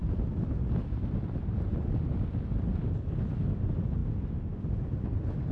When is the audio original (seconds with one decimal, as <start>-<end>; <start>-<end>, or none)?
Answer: 0.0-5.5